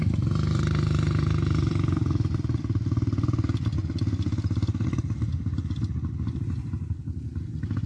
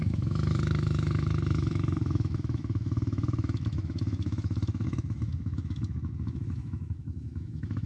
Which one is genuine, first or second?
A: first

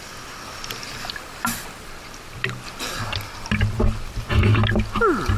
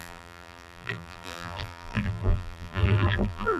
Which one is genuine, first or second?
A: first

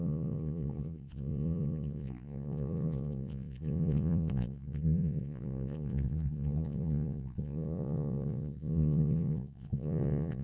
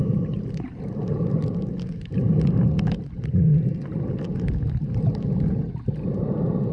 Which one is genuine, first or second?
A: second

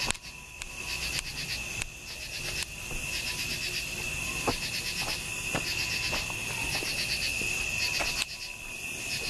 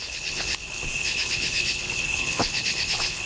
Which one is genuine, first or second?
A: first